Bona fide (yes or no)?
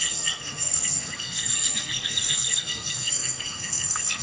no